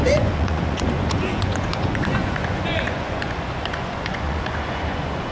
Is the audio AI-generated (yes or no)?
yes